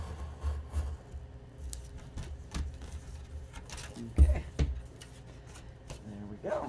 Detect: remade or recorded recorded